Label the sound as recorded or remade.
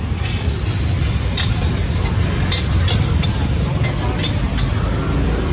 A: recorded